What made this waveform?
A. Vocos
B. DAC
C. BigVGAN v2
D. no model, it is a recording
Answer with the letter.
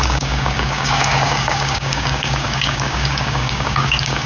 B